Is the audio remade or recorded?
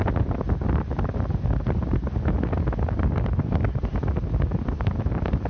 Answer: recorded